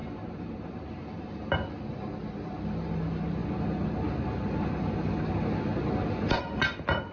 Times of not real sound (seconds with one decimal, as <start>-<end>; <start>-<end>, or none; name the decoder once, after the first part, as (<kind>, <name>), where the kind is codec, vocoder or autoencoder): 0.0-1.5 (vocoder, BigVGAN v2)